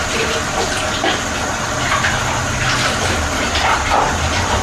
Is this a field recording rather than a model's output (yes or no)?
yes